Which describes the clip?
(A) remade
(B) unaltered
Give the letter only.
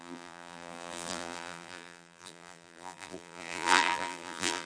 A